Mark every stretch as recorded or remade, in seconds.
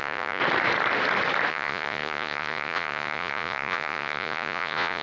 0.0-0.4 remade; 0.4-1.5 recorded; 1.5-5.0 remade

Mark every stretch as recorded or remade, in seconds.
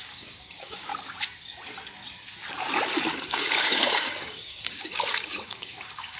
0.0-0.9 remade; 0.9-3.2 recorded; 3.2-6.2 remade